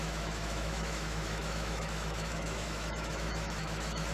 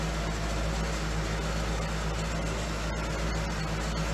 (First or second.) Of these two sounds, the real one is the second